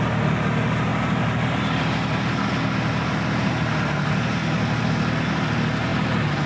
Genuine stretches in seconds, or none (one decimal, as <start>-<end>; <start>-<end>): 0.0-6.5